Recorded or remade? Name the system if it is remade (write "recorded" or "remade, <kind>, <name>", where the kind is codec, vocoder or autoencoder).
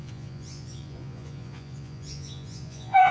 remade, vocoder, Vocos